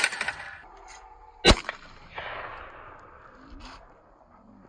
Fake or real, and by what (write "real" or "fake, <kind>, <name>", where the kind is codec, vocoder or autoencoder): real